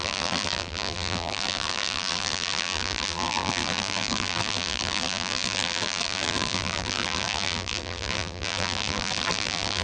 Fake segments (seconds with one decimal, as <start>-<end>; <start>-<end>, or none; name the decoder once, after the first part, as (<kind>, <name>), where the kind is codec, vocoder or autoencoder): 0.0-9.8 (vocoder, BigVGAN v2)